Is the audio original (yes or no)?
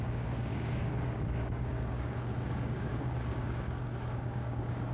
no